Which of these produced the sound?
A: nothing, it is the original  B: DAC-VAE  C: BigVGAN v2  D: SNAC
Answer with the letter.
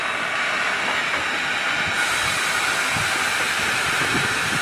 A